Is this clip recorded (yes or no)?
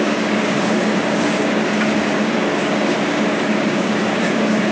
no